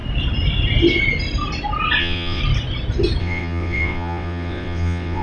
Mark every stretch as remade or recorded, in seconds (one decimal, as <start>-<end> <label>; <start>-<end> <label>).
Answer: 0.0-2.0 recorded; 2.0-2.4 remade; 2.4-3.2 recorded; 3.2-5.2 remade